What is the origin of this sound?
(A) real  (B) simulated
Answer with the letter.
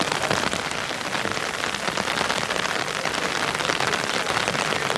B